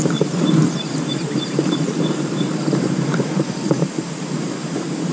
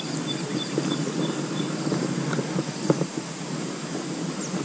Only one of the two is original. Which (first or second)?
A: second